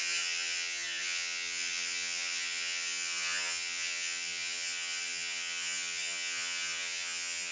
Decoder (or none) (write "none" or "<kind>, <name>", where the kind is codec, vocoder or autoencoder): vocoder, HiFi-GAN